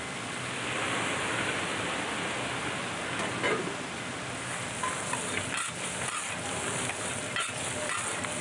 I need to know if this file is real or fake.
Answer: real